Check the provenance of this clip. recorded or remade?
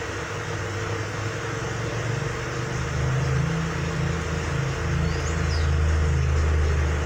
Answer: recorded